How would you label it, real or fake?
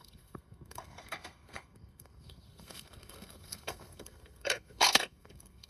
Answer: fake